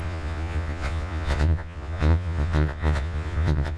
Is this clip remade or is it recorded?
remade